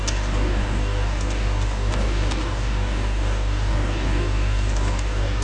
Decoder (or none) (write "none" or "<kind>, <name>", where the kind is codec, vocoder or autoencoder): codec, DAC